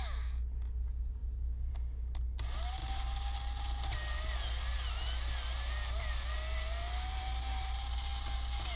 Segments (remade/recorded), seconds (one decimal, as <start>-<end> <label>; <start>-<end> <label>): 0.0-8.8 recorded